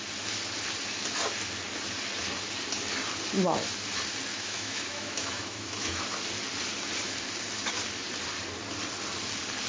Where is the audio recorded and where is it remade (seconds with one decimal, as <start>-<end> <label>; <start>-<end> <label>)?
0.0-4.3 recorded; 4.3-6.0 remade; 6.0-9.7 recorded